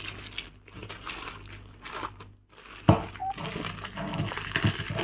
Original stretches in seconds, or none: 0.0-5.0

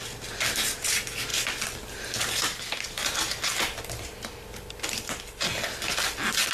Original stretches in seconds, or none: 0.0-6.5

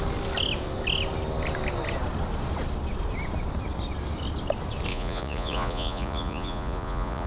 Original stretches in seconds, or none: 0.0-4.9

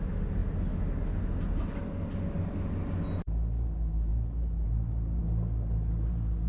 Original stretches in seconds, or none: 0.0-6.5